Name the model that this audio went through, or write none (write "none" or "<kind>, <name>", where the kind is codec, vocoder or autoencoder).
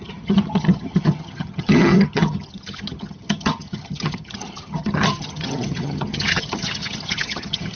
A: vocoder, HiFi-GAN